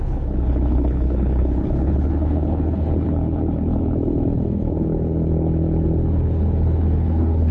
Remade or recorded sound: remade